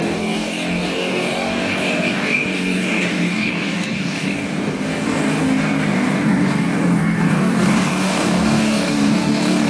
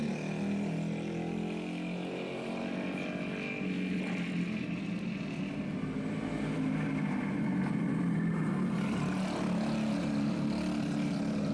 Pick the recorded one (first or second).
second